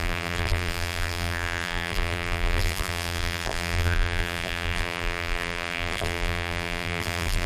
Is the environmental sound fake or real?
fake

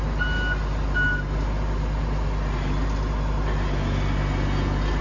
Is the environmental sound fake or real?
real